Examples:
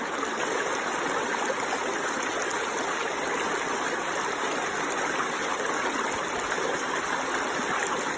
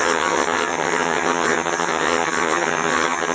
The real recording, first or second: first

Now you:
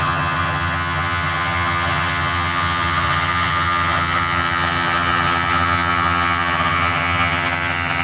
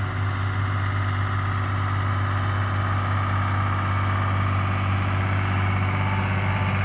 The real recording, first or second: second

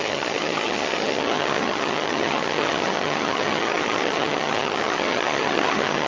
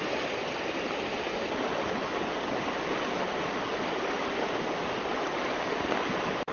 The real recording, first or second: second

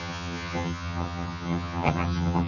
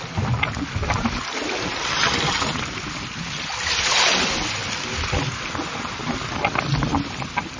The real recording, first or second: second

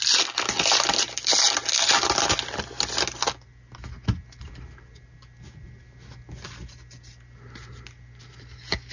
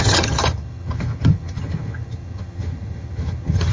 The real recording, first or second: first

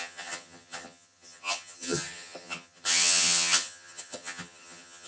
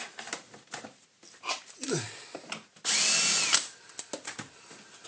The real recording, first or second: second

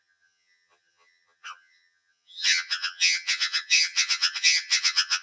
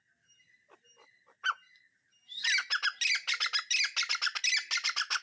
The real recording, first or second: second